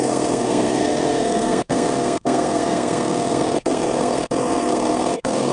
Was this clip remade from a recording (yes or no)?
yes